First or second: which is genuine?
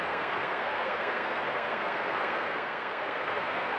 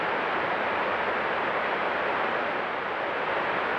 second